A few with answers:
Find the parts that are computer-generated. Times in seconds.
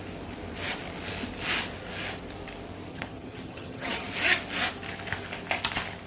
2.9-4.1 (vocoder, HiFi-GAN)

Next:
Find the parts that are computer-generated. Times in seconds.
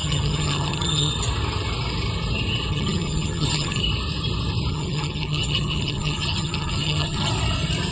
0.0-1.1 (vocoder, HiFi-GAN); 2.7-3.8; 4.7-7.3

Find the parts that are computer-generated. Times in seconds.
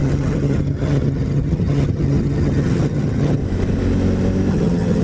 0.0-3.4 (vocoder, HiFi-GAN); 4.5-5.0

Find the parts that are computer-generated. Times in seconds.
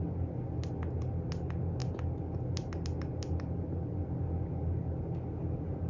none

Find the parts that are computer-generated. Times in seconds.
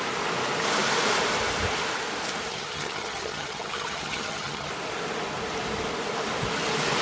2.5-4.7 (vocoder, HiFi-GAN)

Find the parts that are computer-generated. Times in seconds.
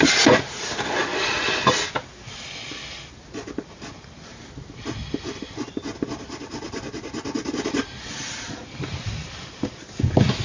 none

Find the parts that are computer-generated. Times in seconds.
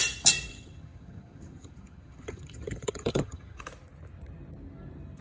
0.5-3.6 (vocoder, HiFi-GAN)